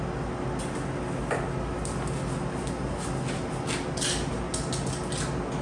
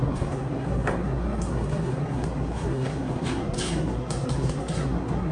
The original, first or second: first